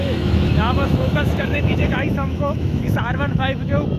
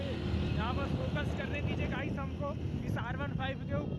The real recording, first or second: second